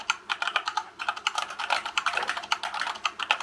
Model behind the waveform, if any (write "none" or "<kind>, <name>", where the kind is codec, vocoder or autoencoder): vocoder, BigVGAN v2